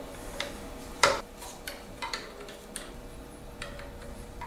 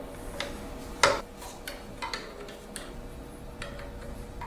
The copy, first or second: first